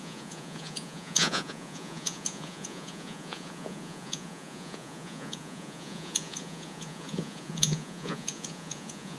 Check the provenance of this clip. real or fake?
fake